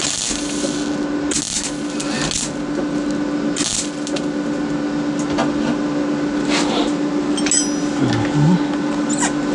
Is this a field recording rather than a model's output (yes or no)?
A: yes